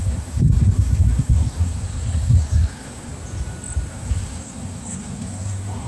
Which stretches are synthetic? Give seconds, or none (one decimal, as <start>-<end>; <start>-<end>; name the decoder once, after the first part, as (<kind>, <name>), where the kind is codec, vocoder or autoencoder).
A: 0.0-3.1 (codec, SNAC); 3.9-5.9